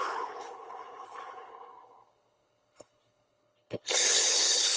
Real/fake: fake